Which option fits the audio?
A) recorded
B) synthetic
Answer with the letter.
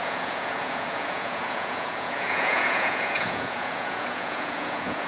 B